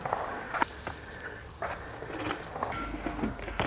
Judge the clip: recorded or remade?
recorded